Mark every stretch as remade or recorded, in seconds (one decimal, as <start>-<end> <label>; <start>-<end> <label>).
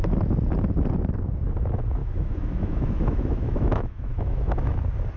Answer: 0.0-2.0 recorded; 2.0-4.8 remade; 4.8-5.2 recorded